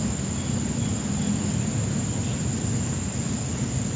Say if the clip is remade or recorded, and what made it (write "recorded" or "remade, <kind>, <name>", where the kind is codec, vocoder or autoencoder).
recorded